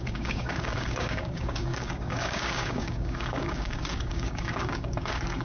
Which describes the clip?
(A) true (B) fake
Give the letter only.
B